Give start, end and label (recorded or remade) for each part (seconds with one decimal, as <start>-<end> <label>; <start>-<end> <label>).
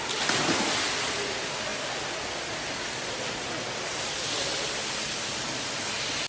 0.0-6.3 recorded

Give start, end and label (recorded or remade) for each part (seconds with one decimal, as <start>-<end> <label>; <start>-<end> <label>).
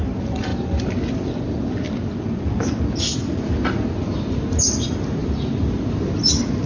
0.0-6.7 recorded